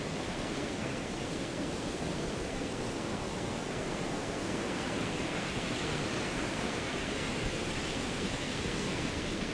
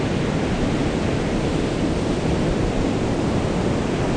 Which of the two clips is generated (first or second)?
first